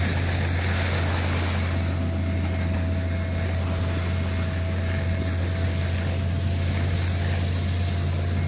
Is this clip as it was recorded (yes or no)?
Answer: yes